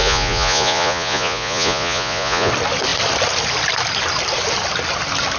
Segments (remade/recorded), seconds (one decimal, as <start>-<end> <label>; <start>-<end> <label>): 0.0-2.5 remade; 2.5-5.4 recorded